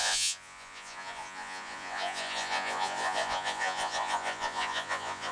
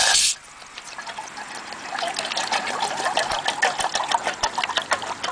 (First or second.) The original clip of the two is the second